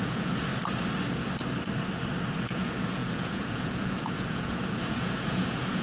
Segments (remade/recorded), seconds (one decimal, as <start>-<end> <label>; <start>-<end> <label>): 0.0-0.5 remade; 0.5-2.3 recorded; 2.3-5.8 remade